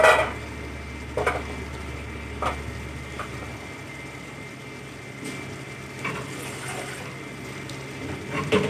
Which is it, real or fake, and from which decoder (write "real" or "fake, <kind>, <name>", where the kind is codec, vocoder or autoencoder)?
real